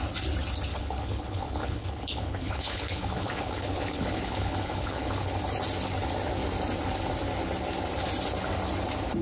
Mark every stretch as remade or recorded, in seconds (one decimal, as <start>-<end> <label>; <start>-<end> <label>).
0.0-0.7 recorded; 0.7-5.3 remade; 5.3-9.2 recorded